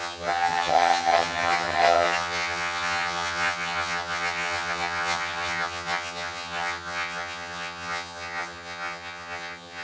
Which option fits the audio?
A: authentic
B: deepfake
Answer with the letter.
B